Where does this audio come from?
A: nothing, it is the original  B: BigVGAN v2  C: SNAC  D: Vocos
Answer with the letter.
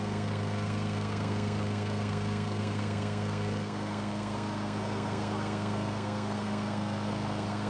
C